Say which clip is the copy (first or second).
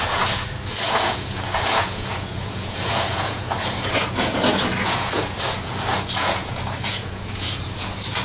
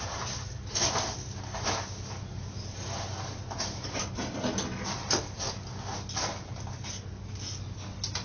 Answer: first